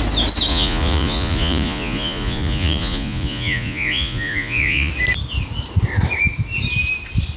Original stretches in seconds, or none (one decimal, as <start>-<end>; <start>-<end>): 0.0-0.5; 4.9-7.4